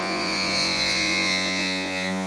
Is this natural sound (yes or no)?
no